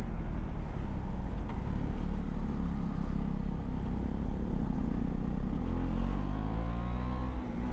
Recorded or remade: recorded